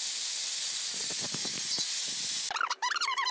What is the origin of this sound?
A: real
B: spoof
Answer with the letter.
A